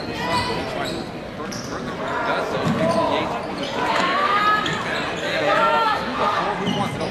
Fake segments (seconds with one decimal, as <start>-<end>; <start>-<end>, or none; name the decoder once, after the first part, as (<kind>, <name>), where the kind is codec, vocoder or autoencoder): 3.9-4.4 (codec, SNAC); 5.3-6.4